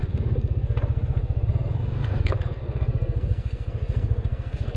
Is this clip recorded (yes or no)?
no